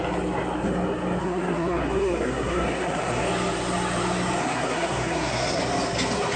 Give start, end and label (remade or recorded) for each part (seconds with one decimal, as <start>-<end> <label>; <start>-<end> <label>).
0.0-1.2 recorded; 1.2-3.2 remade; 3.2-4.4 recorded; 4.4-5.6 remade; 5.6-6.4 recorded